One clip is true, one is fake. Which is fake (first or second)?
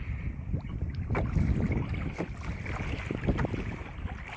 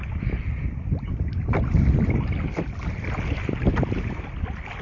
first